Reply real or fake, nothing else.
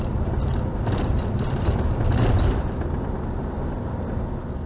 fake